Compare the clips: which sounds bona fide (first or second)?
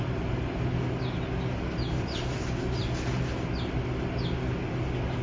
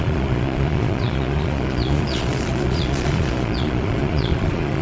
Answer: first